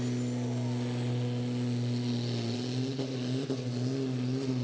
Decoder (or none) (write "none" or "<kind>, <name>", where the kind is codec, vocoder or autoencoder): none